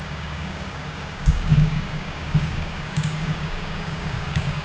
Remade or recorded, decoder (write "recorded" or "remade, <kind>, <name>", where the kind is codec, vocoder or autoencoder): remade, codec, DAC